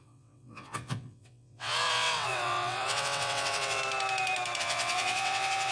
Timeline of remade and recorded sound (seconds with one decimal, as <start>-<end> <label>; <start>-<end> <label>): 0.0-3.8 remade; 3.8-4.6 recorded; 4.6-5.7 remade